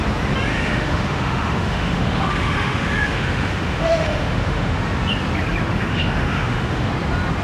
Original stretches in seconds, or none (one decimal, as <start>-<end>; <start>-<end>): 0.0-0.5; 4.8-5.7; 6.9-7.4